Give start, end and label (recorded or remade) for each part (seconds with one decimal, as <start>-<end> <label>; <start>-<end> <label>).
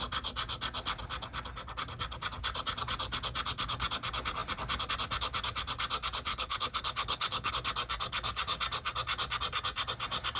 0.0-6.3 recorded; 6.3-7.5 remade; 7.5-10.4 recorded